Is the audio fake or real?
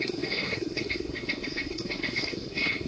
fake